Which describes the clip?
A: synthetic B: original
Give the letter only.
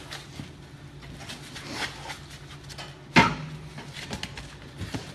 B